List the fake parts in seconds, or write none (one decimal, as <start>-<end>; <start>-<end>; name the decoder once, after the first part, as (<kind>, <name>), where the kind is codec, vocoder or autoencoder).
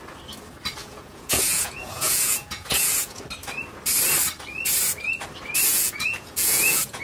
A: 0.8-3.2 (vocoder, Vocos); 5.7-7.0